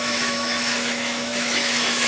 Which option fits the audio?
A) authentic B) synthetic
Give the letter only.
B